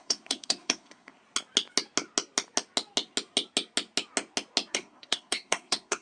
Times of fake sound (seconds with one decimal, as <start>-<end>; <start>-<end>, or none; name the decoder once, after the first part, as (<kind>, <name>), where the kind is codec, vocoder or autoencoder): 0.0-1.2 (codec, SNAC); 4.7-6.0